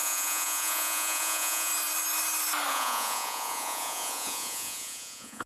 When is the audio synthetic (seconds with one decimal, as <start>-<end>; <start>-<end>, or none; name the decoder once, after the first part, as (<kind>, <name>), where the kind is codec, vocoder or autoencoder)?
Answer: 0.0-1.7 (vocoder, Vocos); 2.7-5.5